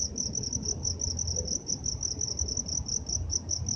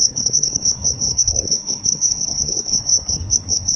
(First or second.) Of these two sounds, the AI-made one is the second